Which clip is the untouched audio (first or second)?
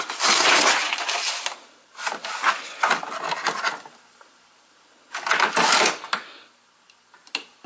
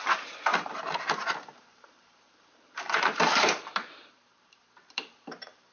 first